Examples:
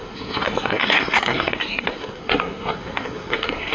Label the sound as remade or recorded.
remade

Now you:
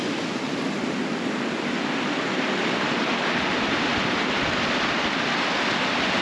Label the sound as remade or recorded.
recorded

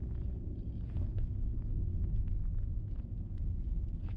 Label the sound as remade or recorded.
recorded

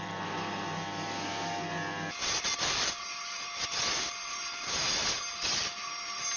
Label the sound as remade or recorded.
remade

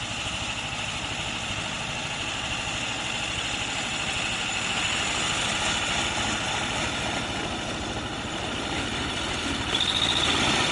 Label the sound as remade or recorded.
recorded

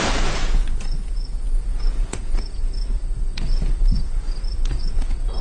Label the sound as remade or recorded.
remade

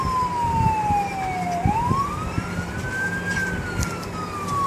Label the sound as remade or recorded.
recorded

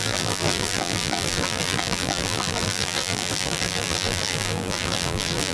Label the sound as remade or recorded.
remade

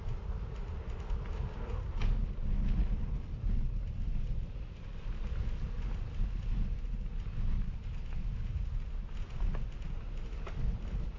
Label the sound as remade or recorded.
recorded